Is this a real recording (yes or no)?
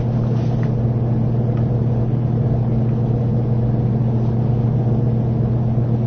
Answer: yes